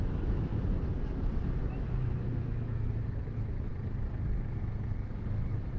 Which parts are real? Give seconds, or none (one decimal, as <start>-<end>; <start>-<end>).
0.5-1.7; 3.7-5.8

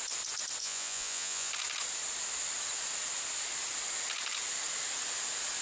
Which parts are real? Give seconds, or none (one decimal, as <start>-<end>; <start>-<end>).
0.0-0.6; 1.5-5.6

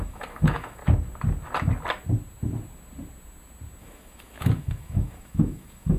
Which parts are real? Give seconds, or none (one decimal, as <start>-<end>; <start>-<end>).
0.8-3.8

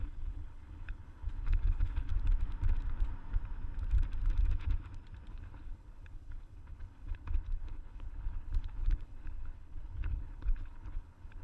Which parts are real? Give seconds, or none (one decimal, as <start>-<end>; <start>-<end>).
2.1-5.3

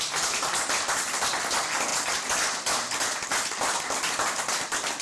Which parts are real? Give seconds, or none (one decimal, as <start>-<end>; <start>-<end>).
0.0-5.0

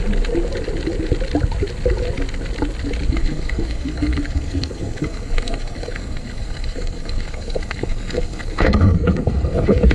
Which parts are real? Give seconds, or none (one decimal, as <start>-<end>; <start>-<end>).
0.0-3.1

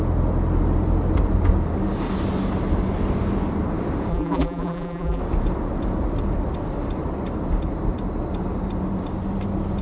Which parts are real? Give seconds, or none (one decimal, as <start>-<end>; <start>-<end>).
0.0-4.1; 5.2-9.8

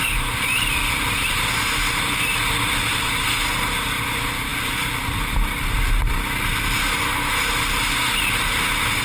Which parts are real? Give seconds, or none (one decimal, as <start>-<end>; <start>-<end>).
0.0-0.8; 1.5-4.5; 5.3-9.0